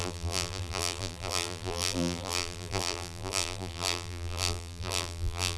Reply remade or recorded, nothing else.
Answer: remade